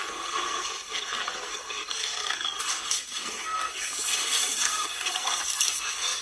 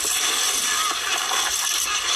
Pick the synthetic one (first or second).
first